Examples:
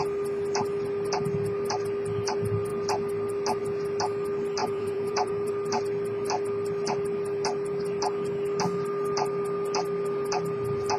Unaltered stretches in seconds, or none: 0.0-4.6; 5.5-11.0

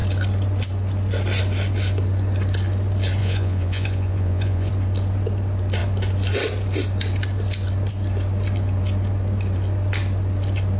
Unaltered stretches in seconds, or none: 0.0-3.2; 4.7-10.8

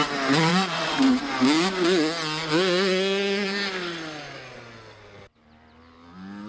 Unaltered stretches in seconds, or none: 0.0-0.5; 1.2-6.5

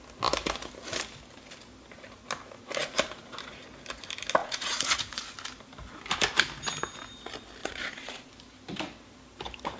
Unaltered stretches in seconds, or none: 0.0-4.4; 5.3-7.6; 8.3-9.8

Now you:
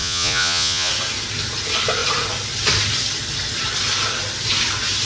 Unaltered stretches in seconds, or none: 0.9-5.1

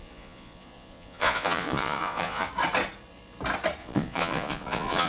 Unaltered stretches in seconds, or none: 2.5-3.8

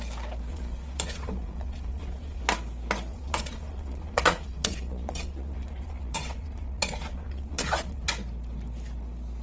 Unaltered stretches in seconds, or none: 0.0-0.5; 2.4-3.1; 8.1-9.4